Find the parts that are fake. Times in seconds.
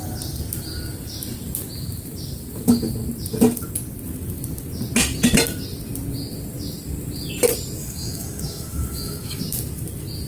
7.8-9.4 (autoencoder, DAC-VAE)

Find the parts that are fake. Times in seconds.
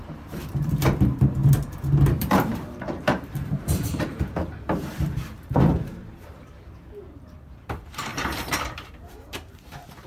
0.0-1.4 (vocoder, BigVGAN v2); 1.9-10.1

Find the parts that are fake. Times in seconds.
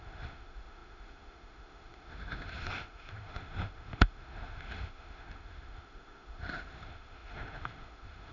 0.0-8.3 (autoencoder, DAC-VAE)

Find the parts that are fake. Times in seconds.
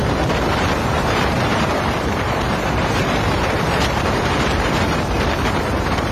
0.5-6.1 (vocoder, BigVGAN v2)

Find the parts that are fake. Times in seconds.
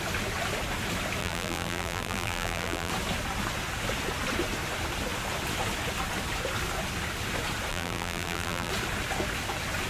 1.2-2.9 (vocoder, BigVGAN v2); 7.7-8.7